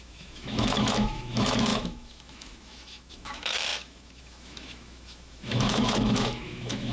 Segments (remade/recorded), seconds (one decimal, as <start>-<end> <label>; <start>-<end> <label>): 0.0-6.9 remade